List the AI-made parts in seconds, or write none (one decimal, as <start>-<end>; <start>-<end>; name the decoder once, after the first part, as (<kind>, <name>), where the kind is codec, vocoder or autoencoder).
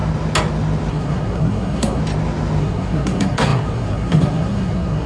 0.9-2.0 (codec, SNAC); 2.6-5.1